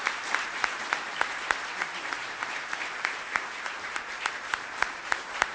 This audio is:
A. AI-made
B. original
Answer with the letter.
A